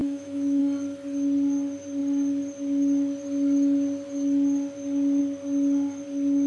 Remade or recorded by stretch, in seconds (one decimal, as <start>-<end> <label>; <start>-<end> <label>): 0.0-0.6 remade; 0.6-6.5 recorded